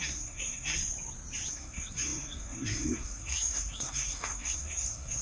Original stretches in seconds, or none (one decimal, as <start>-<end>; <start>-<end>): 0.8-1.5